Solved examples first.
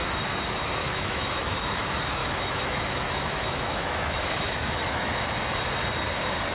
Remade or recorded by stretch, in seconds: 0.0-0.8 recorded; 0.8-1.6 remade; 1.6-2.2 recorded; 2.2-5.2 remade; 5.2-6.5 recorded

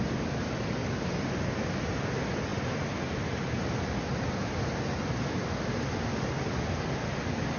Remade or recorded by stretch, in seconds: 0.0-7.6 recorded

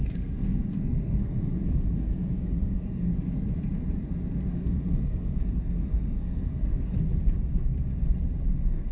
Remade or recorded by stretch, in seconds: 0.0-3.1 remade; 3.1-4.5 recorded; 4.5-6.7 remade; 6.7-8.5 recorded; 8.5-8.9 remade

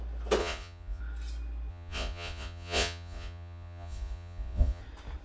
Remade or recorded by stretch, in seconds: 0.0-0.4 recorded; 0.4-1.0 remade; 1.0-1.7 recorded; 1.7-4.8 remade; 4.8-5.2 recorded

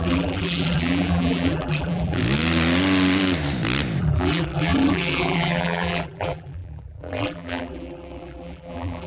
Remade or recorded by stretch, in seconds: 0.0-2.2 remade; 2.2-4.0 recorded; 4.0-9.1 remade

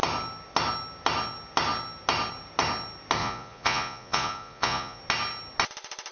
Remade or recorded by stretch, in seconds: 0.0-3.2 recorded; 3.2-5.0 remade; 5.0-6.1 recorded

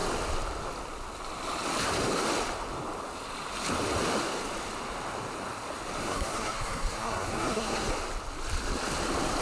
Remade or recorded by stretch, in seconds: 0.0-6.0 recorded; 6.0-7.9 remade; 7.9-9.4 recorded

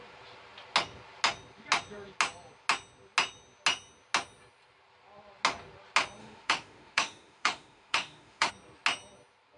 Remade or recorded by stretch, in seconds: 0.0-6.2 recorded; 6.2-8.5 remade; 8.5-9.6 recorded